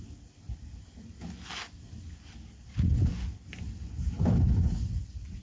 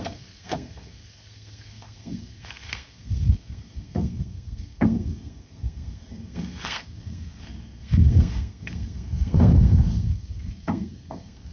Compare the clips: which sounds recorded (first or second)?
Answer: first